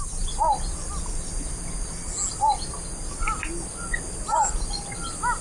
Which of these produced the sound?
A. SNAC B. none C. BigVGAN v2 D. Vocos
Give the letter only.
B